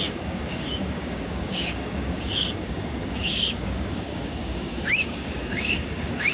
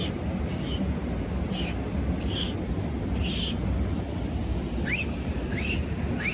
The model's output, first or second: first